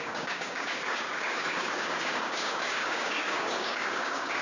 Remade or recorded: remade